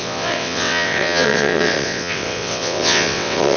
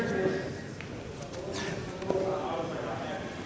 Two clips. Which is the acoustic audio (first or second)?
second